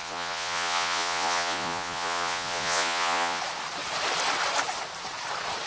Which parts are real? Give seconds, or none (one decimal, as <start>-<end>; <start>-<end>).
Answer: 3.4-5.7